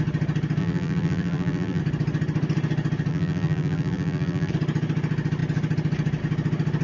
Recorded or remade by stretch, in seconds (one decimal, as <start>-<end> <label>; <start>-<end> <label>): 0.0-0.6 recorded; 0.6-1.8 remade; 1.8-3.1 recorded; 3.1-4.5 remade; 4.5-6.8 recorded